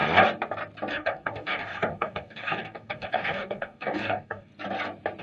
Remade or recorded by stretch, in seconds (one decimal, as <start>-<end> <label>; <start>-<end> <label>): 0.0-0.9 recorded; 0.9-4.5 remade; 4.5-5.2 recorded